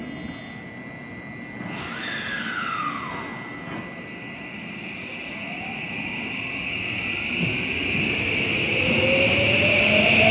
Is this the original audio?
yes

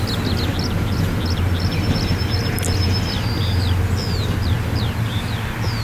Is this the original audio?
yes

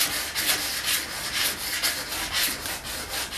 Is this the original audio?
yes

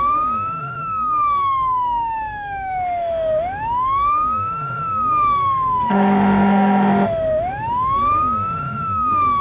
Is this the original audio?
no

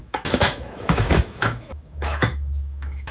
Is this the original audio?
no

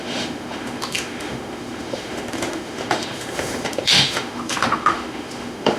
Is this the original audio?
no